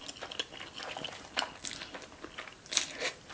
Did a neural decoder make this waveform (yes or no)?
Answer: no